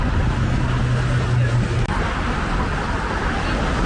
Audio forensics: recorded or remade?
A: recorded